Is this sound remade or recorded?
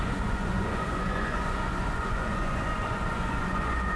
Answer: remade